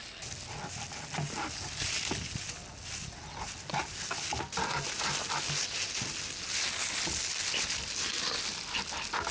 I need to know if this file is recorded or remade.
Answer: recorded